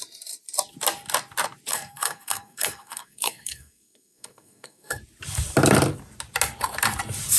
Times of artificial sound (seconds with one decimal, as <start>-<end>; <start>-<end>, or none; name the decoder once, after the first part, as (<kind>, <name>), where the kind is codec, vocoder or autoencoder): 1.7-5.0 (codec, SNAC)